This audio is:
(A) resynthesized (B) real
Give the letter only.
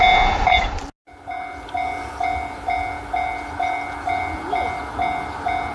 B